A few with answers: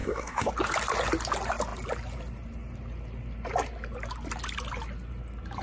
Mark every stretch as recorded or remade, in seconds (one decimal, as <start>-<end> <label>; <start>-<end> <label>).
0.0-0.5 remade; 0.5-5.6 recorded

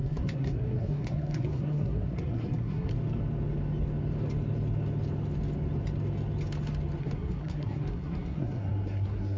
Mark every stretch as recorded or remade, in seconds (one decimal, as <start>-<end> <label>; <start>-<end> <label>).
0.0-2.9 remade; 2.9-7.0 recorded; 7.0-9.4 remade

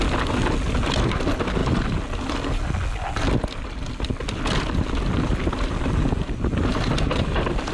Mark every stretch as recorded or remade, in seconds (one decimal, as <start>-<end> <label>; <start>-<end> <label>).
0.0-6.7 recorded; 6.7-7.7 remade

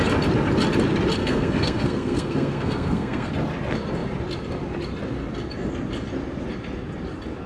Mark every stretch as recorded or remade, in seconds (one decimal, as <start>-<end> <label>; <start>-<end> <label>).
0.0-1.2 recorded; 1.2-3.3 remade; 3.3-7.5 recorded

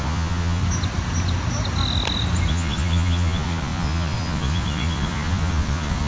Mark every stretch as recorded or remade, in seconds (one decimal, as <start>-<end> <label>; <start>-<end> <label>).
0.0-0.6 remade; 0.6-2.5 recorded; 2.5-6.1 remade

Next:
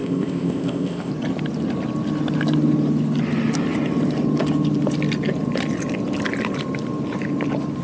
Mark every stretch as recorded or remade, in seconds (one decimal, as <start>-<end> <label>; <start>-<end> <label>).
0.0-1.1 remade; 1.1-7.8 recorded

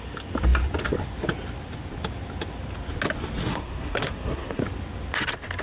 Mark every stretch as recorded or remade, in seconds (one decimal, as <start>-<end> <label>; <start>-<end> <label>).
0.0-3.5 recorded; 3.5-4.6 remade; 4.6-5.6 recorded